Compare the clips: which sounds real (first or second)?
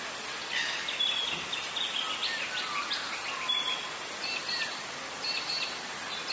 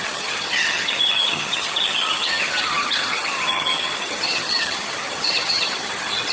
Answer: first